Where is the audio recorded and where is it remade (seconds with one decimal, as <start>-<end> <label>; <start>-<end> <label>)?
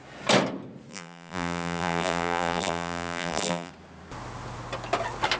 0.0-0.9 recorded; 0.9-3.7 remade; 3.7-5.4 recorded